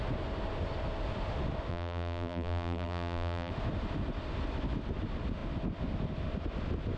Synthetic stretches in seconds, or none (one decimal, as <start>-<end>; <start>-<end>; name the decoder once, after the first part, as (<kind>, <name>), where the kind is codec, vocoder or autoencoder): 1.7-3.5 (vocoder, BigVGAN v2)